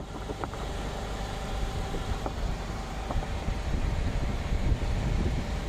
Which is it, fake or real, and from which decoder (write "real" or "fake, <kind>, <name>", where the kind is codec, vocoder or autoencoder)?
fake, vocoder, BigVGAN v2